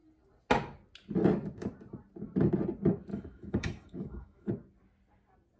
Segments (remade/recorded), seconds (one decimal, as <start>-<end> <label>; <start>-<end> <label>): 0.0-3.1 recorded; 3.1-4.5 remade; 4.5-5.6 recorded